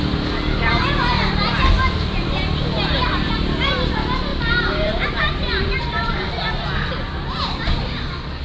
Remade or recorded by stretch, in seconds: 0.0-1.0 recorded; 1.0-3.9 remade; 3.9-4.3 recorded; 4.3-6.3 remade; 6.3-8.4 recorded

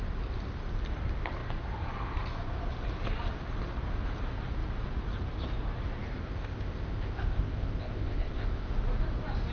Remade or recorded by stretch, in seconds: 0.0-6.2 recorded; 6.2-8.7 remade; 8.7-9.5 recorded

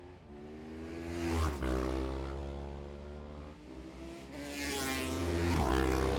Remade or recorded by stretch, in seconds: 0.0-5.2 recorded; 5.2-5.7 remade; 5.7-6.2 recorded

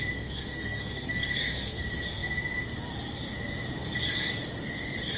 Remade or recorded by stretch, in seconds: 0.0-0.5 recorded; 0.5-1.8 remade; 1.8-5.2 recorded

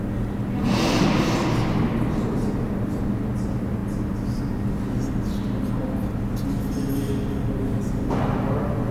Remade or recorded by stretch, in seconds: 0.0-8.9 recorded

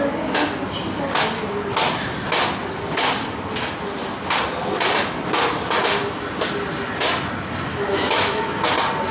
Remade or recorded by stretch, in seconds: 0.0-7.7 recorded; 7.7-8.6 remade; 8.6-9.1 recorded

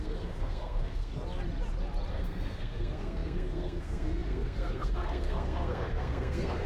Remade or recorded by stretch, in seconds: 0.0-1.1 remade; 1.1-2.1 recorded; 2.1-6.7 remade

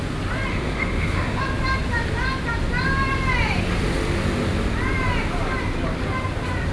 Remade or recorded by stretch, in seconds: 0.0-0.5 recorded; 0.5-1.4 remade; 1.4-6.7 recorded